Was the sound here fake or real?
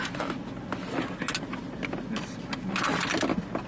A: real